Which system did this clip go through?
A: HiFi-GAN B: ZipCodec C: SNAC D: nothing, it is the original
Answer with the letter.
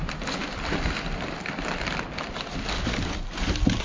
D